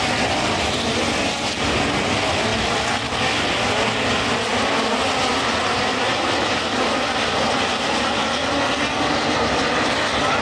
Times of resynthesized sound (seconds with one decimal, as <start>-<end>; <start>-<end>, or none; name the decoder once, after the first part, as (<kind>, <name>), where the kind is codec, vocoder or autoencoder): none